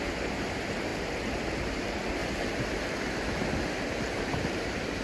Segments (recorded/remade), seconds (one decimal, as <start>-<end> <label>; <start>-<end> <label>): 0.0-0.9 remade; 0.9-1.5 recorded; 1.5-2.2 remade; 2.2-4.5 recorded; 4.5-5.0 remade